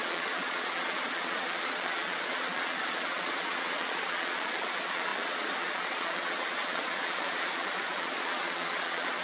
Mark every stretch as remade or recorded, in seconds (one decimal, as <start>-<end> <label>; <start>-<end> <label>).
0.0-9.2 remade